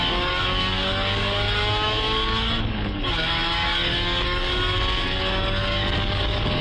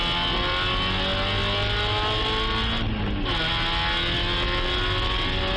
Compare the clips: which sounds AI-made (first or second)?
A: first